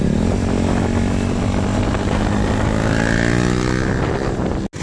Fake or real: real